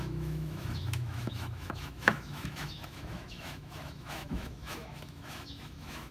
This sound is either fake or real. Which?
fake